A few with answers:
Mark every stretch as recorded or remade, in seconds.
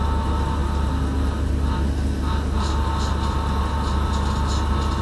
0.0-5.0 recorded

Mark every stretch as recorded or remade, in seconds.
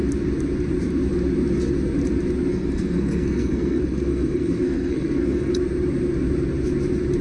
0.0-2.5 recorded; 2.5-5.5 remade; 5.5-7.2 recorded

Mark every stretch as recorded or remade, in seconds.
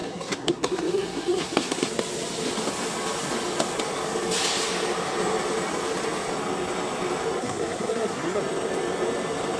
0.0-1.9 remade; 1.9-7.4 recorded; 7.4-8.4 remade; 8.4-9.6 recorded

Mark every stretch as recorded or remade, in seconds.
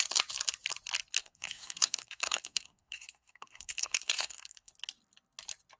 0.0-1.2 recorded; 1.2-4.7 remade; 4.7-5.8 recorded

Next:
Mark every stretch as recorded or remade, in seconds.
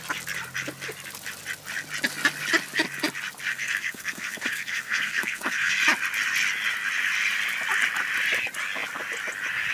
0.0-3.5 recorded; 3.5-5.7 remade; 5.7-9.7 recorded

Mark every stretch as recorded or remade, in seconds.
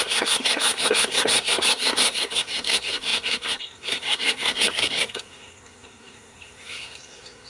0.0-7.5 remade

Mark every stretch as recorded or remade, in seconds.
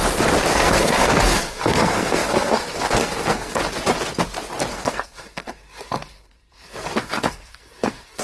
0.0-0.5 recorded; 0.5-3.6 remade; 3.6-4.7 recorded; 4.7-8.2 remade